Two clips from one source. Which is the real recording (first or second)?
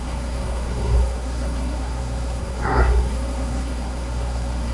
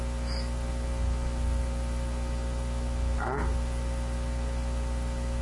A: second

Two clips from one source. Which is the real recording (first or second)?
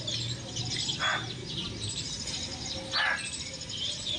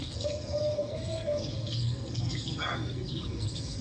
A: first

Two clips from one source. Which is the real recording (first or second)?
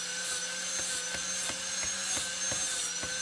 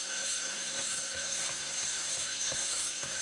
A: first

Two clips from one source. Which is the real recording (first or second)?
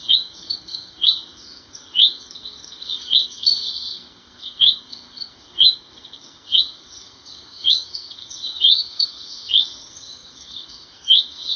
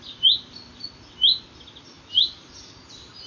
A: second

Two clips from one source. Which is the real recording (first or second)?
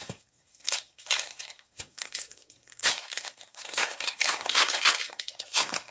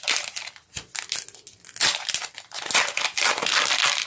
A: second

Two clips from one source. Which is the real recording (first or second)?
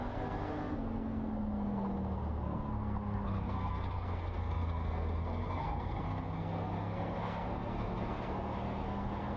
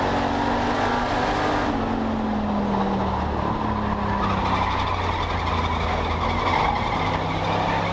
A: second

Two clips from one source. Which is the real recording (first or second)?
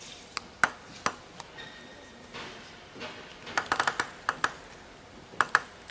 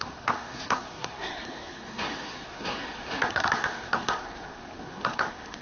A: first